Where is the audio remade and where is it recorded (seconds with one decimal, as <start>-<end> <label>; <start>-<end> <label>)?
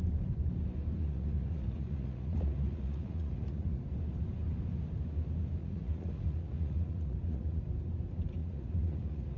0.0-1.0 recorded; 1.0-3.8 remade; 3.8-5.6 recorded; 5.6-7.6 remade; 7.6-8.4 recorded; 8.4-9.4 remade